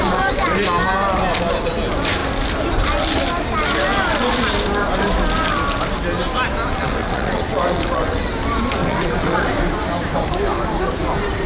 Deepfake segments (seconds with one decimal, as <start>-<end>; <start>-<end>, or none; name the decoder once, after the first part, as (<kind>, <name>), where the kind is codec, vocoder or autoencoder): 6.8-8.3 (vocoder, WaveNeXt); 8.8-9.5